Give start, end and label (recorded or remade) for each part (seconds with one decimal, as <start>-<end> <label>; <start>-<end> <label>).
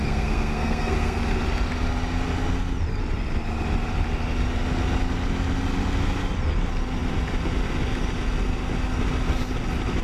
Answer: 0.0-1.2 remade; 1.2-10.0 recorded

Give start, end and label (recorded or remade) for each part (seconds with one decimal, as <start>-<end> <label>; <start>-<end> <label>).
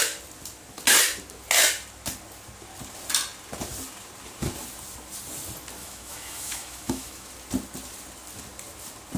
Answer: 0.0-5.8 recorded; 5.8-7.3 remade; 7.3-9.2 recorded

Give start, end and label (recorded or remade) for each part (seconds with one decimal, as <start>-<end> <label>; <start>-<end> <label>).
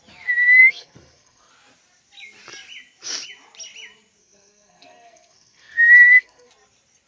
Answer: 0.0-0.6 recorded; 0.6-1.5 remade; 1.5-4.2 recorded; 4.2-6.5 remade; 6.5-7.1 recorded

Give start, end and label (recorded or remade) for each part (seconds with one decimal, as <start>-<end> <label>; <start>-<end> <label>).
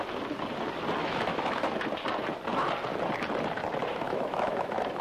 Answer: 0.0-1.0 recorded; 1.0-1.7 remade; 1.7-3.8 recorded; 3.8-5.0 remade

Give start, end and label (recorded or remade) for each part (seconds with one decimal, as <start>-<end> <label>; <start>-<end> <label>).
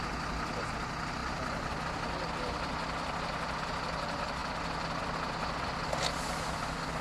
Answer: 0.0-7.0 recorded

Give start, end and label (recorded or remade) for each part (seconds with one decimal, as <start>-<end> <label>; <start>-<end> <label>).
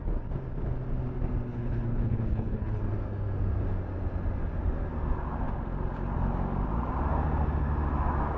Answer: 0.0-1.5 recorded; 1.5-2.8 remade; 2.8-8.4 recorded